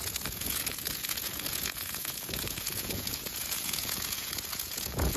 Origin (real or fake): fake